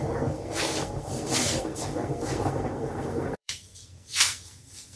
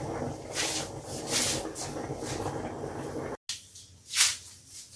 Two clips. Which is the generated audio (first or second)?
first